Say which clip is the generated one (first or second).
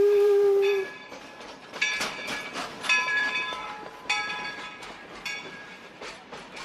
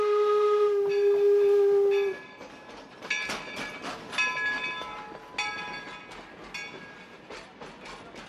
first